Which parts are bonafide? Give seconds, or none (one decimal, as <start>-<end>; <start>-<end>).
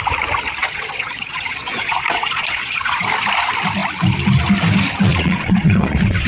0.0-0.6; 3.0-5.1